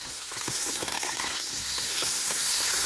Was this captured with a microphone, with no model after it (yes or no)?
no